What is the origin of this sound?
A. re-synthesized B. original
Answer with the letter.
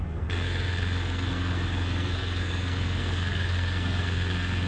A